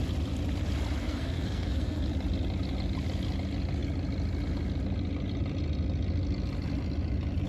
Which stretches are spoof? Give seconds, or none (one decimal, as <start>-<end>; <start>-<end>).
1.0-2.0